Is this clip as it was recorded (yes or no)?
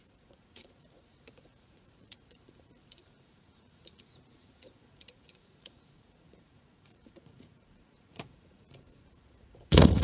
no